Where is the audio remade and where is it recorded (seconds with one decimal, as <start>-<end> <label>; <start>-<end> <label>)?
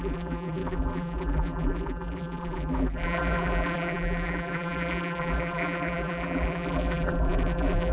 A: 0.0-7.9 remade